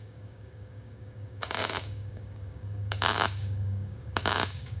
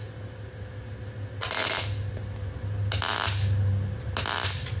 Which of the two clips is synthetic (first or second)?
first